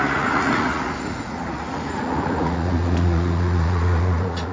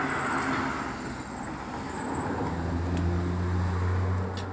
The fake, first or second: first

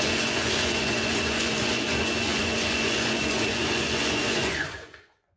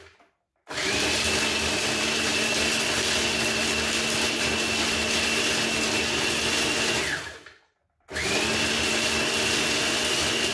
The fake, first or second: first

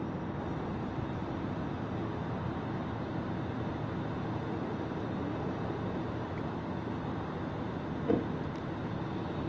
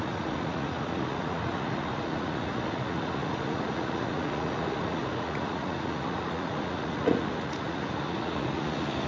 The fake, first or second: second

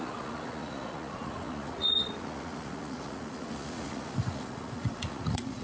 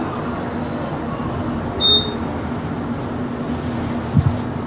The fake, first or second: first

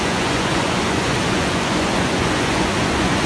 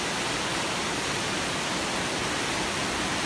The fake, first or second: first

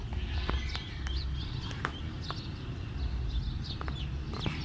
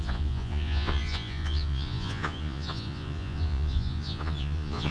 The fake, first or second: second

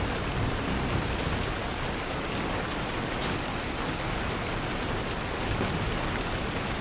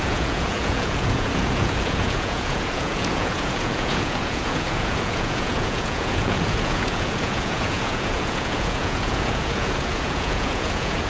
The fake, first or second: second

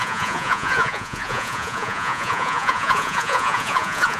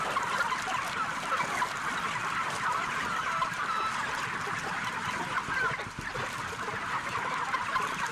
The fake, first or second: first